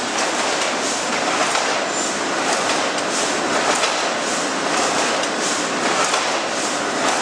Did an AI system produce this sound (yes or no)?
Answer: no